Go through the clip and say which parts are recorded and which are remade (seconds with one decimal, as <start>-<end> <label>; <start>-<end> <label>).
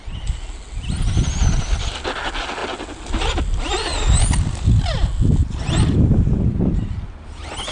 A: 0.0-3.9 recorded; 3.9-4.8 remade; 4.8-7.7 recorded